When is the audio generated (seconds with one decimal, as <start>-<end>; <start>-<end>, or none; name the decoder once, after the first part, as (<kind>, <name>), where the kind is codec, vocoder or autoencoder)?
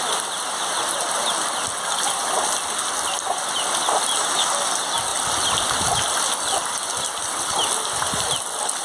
5.1-8.8 (vocoder, BigVGAN v2)